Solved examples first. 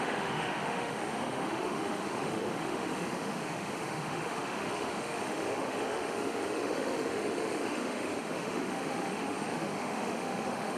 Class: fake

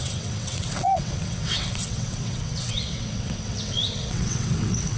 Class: fake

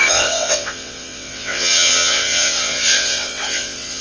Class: fake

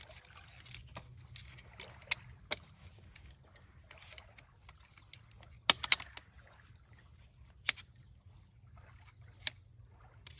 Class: real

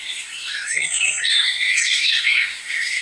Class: fake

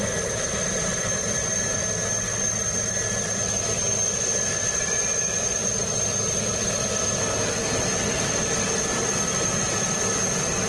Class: real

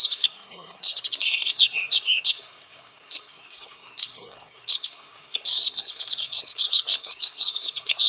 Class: fake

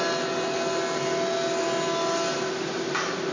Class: real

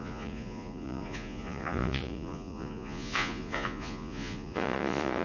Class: fake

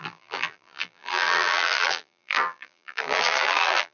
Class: fake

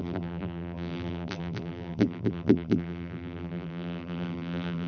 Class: fake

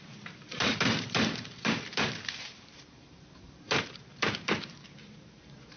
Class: fake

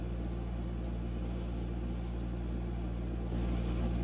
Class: real